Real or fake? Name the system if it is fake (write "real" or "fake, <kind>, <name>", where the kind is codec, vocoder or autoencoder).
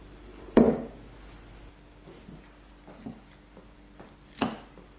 real